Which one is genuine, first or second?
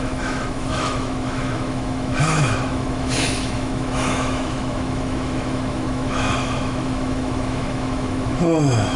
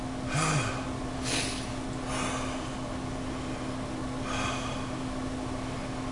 second